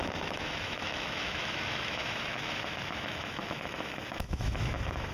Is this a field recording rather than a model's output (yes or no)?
no